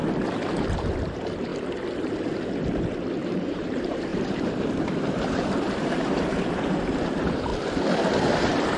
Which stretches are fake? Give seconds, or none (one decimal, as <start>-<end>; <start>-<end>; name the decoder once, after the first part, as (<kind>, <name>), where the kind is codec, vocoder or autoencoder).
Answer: 0.6-1.5 (vocoder, BigVGAN v2); 3.3-7.5; 8.0-8.8